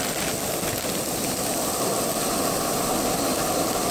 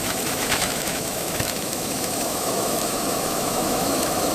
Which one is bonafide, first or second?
first